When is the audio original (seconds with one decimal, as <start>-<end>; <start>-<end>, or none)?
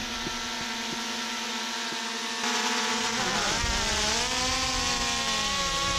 0.0-6.0